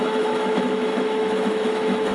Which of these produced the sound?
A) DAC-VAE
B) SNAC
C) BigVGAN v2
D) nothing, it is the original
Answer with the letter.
A